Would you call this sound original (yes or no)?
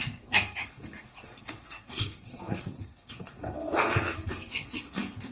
no